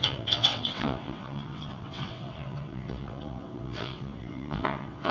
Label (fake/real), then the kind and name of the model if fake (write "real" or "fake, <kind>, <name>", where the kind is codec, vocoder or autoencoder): fake, vocoder, WaveNeXt